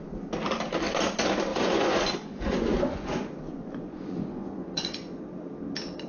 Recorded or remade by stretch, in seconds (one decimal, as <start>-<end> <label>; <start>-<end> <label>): 0.0-1.5 recorded; 1.5-5.2 remade; 5.2-6.1 recorded